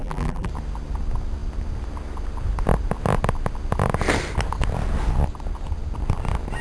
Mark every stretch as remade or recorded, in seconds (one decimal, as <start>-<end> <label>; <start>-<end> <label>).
0.0-0.5 remade; 0.5-6.6 recorded